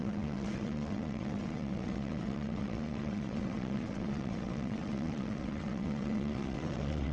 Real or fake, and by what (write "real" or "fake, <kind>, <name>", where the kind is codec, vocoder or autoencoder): fake, vocoder, WaveNeXt